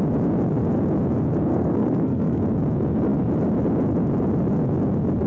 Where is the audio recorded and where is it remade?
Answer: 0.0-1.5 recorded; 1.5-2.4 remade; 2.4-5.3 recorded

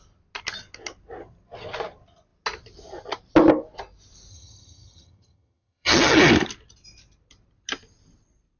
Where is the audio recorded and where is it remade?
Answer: 0.0-4.3 recorded; 4.3-6.2 remade; 6.2-8.6 recorded

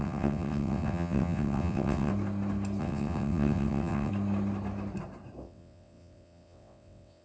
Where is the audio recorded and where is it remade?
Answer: 0.0-2.1 remade; 2.1-2.8 recorded; 2.8-4.1 remade; 4.1-5.4 recorded; 5.4-7.2 remade

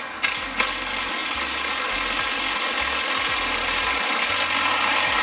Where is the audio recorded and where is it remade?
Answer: 0.0-5.2 recorded

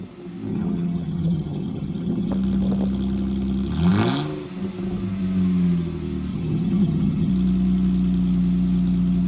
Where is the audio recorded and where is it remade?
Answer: 0.0-0.5 recorded; 0.5-2.3 remade; 2.3-6.3 recorded; 6.3-7.3 remade; 7.3-9.3 recorded

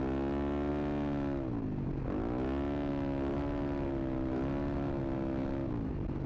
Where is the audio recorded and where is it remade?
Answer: 0.0-6.3 recorded

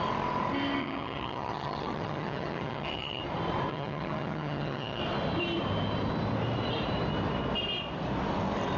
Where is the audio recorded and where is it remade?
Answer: 0.0-0.8 recorded; 0.8-3.2 remade; 3.2-3.7 recorded; 3.7-5.0 remade; 5.0-8.8 recorded

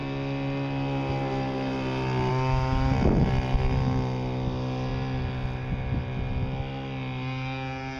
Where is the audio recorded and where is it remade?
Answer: 0.0-8.0 recorded